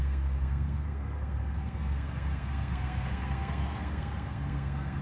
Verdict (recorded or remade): remade